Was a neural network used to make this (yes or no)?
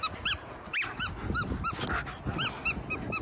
no